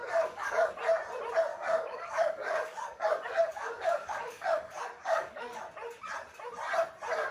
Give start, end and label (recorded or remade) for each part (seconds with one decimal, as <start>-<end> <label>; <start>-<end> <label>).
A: 0.0-0.7 remade; 0.7-1.5 recorded; 1.5-5.6 remade; 5.6-7.3 recorded